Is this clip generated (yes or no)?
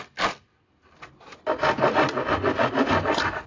no